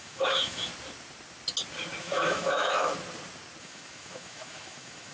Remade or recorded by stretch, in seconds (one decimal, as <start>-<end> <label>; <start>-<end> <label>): 0.0-0.7 remade; 0.7-2.0 recorded; 2.0-2.9 remade; 2.9-3.6 recorded; 3.6-5.1 remade